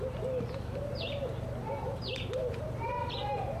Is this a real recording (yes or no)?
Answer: no